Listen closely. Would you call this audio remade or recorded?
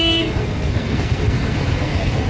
remade